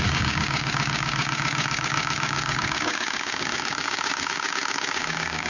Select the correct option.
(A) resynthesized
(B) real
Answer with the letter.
A